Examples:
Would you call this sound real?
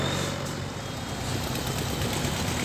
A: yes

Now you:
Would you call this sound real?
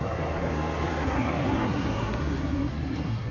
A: no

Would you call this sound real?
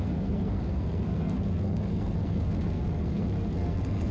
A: no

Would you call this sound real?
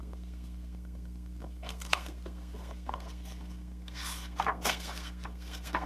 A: no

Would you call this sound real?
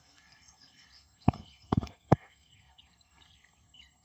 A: no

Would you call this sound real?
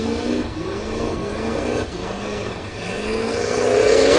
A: no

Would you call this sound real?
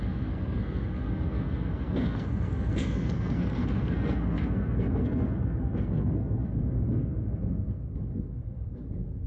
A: no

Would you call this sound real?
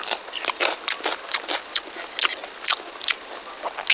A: yes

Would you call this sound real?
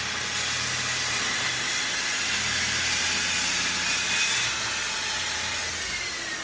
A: yes